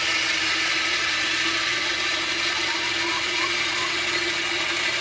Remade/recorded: recorded